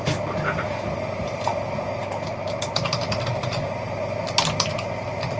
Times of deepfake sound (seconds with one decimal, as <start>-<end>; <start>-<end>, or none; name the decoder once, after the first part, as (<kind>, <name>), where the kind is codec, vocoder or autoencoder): none